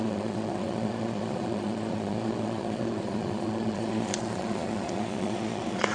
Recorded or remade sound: remade